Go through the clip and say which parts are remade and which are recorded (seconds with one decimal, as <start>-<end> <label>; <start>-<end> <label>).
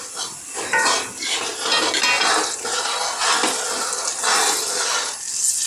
0.0-5.7 recorded